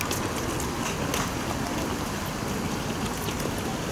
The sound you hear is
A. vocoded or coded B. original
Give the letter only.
B